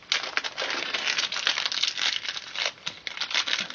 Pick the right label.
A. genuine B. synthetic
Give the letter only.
A